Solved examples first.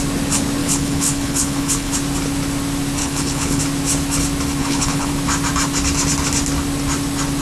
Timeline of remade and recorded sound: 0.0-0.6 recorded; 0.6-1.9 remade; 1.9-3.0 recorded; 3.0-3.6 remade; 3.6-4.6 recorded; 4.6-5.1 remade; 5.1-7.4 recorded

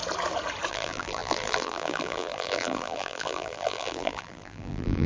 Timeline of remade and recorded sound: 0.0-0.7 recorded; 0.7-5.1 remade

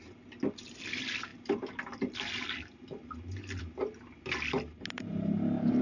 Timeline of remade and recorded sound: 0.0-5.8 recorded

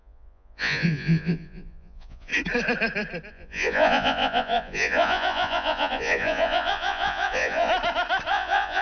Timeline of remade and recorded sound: 0.0-2.3 remade; 2.3-3.3 recorded; 3.3-7.7 remade; 7.7-8.3 recorded; 8.3-8.8 remade